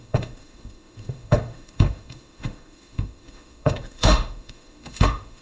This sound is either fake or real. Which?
fake